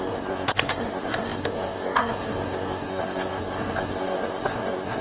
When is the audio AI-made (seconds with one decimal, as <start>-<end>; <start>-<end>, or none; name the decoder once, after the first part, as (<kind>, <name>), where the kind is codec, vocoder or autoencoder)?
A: 0.0-5.0 (codec, SNAC)